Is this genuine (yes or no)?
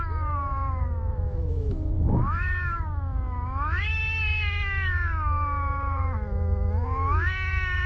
no